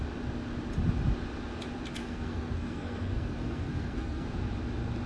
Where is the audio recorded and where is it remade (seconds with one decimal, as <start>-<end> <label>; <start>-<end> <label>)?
0.0-2.0 recorded; 2.0-4.4 remade; 4.4-5.1 recorded